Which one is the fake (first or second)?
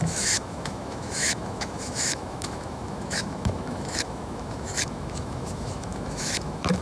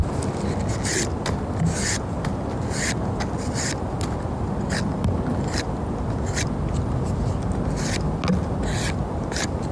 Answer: first